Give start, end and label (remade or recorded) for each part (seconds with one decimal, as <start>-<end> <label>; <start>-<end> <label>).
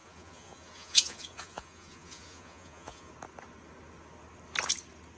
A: 0.0-3.1 remade; 3.1-5.2 recorded